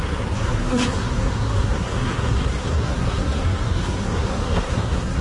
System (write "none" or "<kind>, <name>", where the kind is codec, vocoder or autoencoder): codec, SNAC